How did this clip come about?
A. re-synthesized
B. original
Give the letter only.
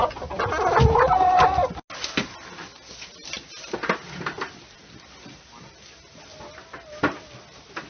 B